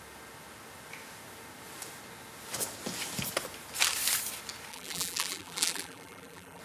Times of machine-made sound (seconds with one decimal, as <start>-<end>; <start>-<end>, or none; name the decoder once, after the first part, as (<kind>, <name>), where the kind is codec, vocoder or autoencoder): 4.7-6.6 (vocoder, BigVGAN v2)